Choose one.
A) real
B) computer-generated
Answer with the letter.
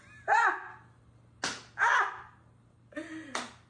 A